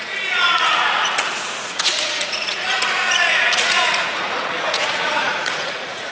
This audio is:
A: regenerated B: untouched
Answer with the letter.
A